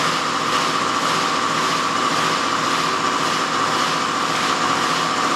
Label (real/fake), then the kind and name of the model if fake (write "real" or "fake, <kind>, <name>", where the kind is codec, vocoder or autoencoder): real